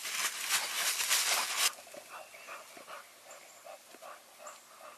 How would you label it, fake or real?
real